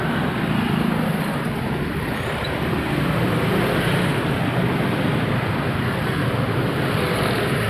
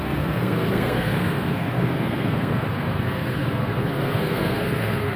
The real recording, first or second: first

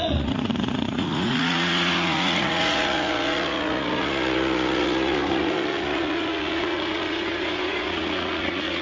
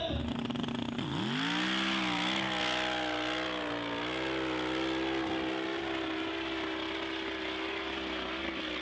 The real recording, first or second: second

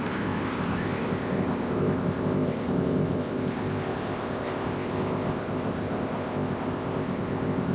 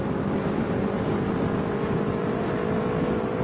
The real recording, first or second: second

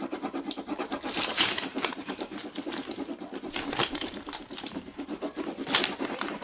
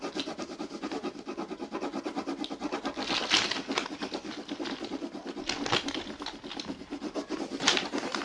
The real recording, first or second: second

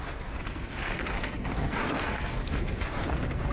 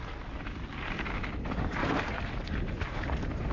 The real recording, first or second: second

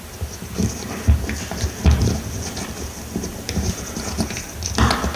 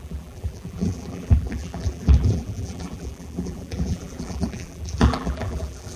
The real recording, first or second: first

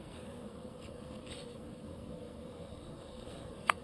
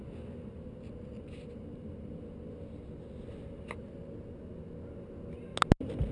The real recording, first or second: second